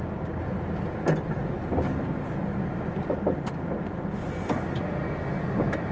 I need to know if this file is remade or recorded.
recorded